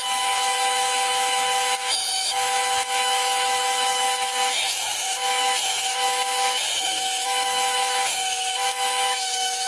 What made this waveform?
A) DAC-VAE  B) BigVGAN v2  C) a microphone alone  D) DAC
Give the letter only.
A